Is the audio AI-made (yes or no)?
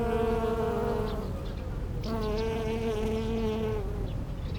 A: no